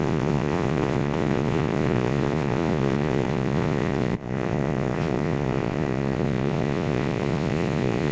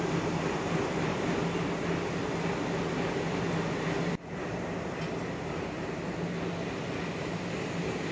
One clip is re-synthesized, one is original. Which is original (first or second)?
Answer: second